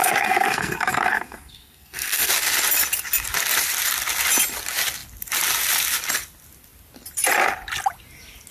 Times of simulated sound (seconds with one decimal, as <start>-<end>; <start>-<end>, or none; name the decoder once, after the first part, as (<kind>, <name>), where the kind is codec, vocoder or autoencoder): 0.0-2.3 (codec, SNAC)